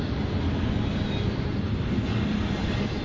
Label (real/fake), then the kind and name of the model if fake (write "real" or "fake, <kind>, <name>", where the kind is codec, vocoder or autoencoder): real